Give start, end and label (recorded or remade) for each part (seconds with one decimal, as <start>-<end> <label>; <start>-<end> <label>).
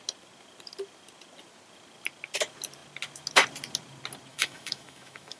0.0-4.3 recorded; 4.3-5.4 remade